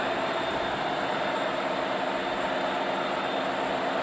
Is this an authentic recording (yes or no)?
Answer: yes